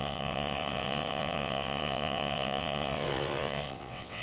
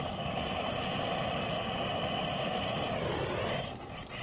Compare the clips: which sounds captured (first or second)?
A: second